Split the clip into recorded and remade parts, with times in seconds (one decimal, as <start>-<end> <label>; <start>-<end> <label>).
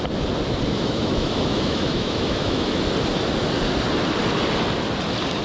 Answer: 0.0-0.7 recorded; 0.7-2.8 remade; 2.8-5.4 recorded